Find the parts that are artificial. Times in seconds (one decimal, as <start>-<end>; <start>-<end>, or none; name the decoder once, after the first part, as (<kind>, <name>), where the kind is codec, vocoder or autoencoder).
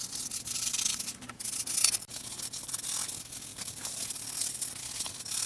3.5-4.0 (vocoder, BigVGAN v2)